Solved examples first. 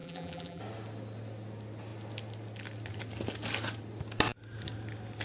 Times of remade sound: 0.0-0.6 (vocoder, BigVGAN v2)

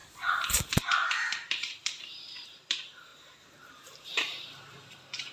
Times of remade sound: 0.7-5.3 (vocoder, BigVGAN v2)

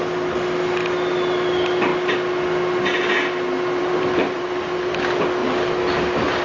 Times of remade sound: 3.8-4.4 (vocoder, BigVGAN v2)

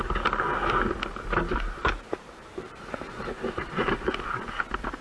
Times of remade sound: 1.5-4.4 (vocoder, BigVGAN v2)